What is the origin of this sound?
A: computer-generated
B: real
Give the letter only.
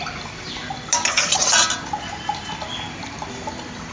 B